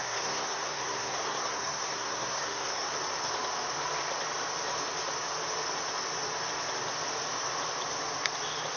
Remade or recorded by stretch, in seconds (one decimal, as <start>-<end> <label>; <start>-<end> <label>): 0.0-2.9 remade; 2.9-8.8 recorded